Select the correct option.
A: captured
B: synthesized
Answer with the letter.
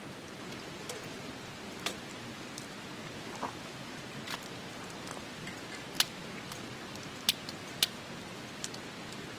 A